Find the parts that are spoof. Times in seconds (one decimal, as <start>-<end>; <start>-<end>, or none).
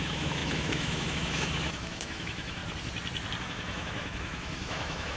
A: 0.0-2.6; 3.4-5.2